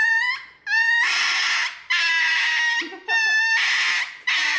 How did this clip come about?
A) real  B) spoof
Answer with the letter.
A